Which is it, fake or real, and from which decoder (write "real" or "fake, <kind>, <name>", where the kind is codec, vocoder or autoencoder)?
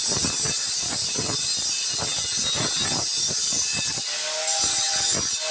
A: real